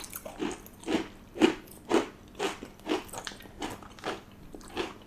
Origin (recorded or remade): recorded